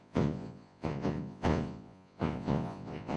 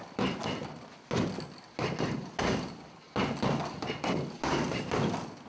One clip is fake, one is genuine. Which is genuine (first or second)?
second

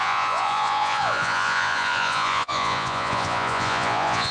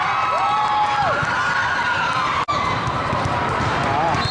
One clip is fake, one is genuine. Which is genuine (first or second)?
second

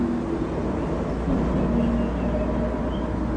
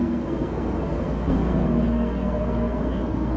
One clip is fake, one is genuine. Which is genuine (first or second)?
first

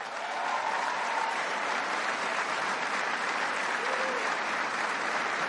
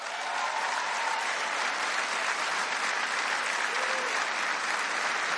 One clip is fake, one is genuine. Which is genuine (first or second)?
second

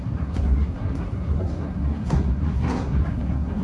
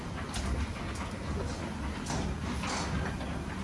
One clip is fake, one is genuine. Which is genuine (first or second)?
second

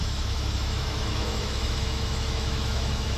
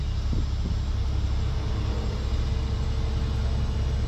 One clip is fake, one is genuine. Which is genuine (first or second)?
second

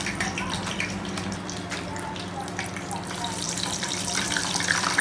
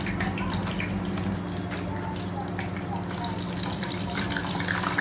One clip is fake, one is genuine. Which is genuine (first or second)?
second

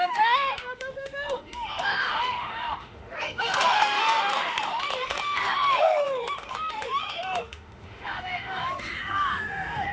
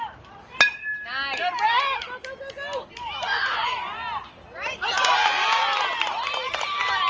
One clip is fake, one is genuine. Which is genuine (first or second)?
second